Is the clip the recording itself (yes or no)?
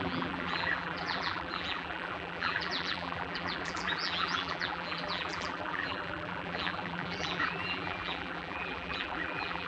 no